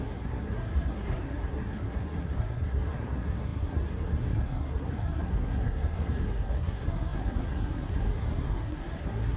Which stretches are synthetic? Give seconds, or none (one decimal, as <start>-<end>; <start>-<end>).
0.0-9.4